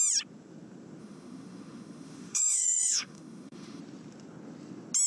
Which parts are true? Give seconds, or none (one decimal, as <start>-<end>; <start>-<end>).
0.0-1.0; 3.8-5.1